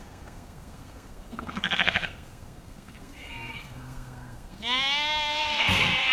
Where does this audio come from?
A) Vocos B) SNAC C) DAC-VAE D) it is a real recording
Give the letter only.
B